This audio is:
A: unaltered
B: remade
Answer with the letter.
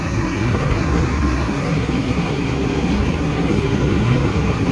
B